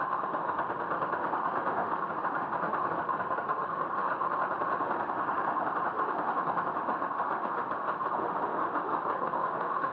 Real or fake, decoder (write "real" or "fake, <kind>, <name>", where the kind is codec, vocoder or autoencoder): fake, autoencoder, DAC-VAE